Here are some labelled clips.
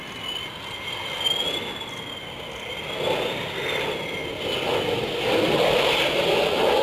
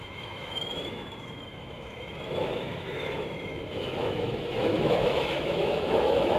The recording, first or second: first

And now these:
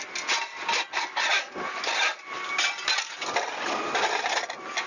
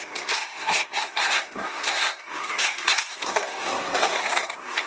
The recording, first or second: first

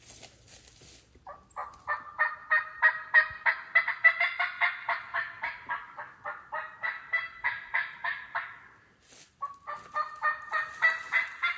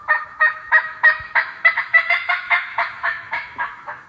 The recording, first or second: first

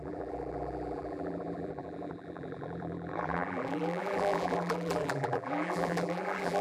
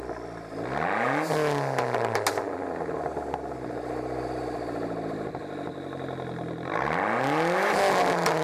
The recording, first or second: second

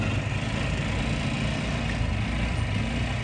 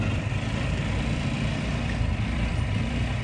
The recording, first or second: first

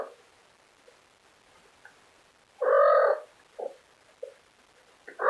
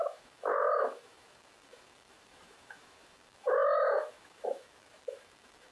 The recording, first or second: first